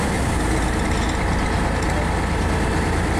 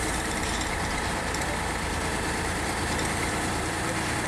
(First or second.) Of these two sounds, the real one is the first